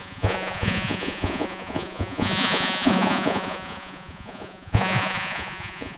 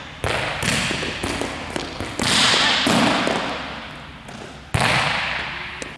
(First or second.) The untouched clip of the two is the second